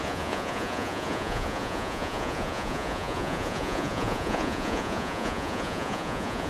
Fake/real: fake